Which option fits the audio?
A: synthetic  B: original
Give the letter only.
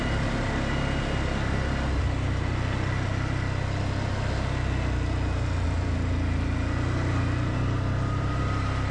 B